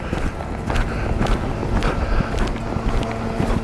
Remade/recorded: recorded